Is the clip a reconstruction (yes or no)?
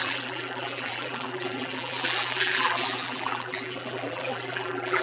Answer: yes